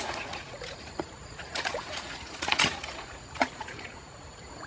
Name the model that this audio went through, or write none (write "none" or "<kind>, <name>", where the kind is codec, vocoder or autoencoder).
vocoder, Vocos